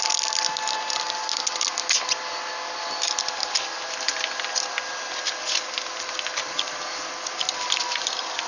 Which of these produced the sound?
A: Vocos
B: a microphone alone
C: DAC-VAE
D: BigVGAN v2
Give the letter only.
B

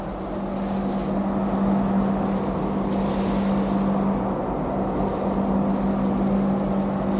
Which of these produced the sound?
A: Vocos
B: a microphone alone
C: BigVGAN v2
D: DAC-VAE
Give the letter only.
B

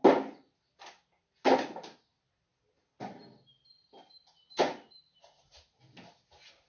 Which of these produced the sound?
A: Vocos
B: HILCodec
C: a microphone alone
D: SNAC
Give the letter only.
C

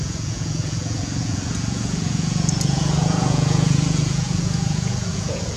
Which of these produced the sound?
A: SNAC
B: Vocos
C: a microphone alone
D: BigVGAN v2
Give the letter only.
B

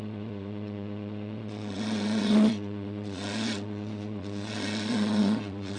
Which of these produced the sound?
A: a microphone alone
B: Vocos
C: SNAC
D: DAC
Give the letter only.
B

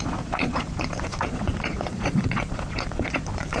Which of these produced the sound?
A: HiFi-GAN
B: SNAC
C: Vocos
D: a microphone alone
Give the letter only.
C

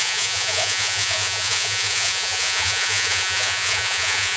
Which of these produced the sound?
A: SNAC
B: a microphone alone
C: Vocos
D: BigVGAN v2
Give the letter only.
C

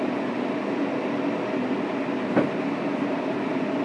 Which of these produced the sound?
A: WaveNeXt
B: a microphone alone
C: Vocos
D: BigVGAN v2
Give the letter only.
B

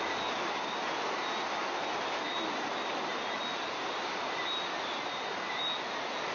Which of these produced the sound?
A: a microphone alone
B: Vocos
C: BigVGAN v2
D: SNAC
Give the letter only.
A